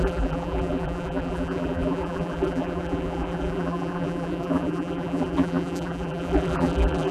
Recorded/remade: remade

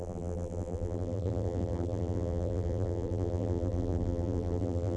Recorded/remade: remade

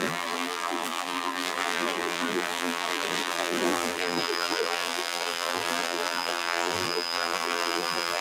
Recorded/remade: remade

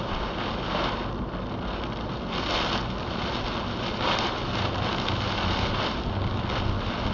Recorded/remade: recorded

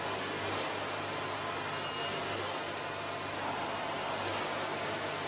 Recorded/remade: recorded